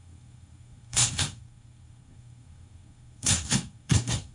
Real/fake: fake